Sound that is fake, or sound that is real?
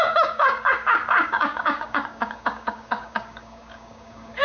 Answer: fake